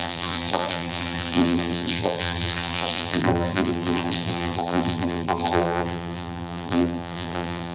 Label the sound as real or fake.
fake